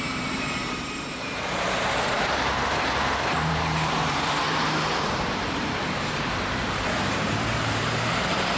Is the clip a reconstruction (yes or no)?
yes